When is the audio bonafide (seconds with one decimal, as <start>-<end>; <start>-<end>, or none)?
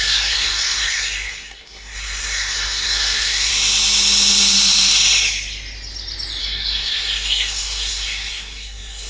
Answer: 3.5-6.4